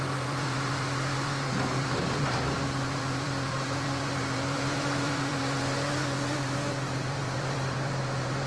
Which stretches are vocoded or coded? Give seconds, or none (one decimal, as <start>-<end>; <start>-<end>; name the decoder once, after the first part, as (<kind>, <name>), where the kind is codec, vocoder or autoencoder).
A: 0.0-8.5 (vocoder, BigVGAN v2)